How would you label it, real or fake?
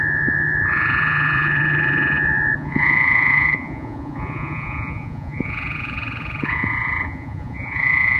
fake